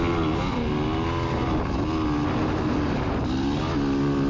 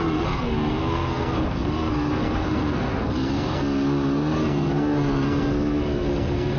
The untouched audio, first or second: first